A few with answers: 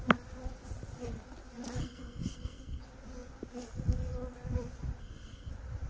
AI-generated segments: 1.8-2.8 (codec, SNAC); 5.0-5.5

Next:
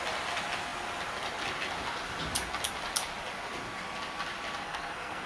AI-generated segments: 4.6-5.3 (codec, SNAC)